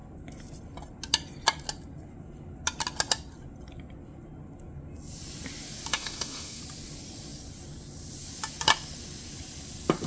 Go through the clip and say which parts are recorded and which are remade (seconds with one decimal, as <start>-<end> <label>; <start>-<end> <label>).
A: 0.0-5.9 recorded; 5.9-6.6 remade; 6.6-10.1 recorded